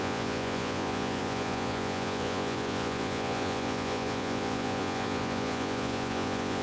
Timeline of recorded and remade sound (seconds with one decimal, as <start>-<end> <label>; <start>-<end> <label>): 0.0-6.6 remade